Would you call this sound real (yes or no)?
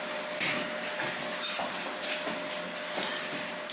yes